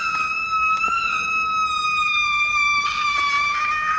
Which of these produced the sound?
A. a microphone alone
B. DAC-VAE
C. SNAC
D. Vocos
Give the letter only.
A